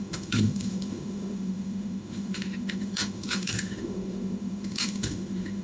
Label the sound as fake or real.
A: fake